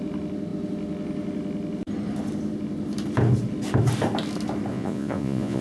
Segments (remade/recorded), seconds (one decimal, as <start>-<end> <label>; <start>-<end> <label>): 0.0-4.7 recorded; 4.7-5.6 remade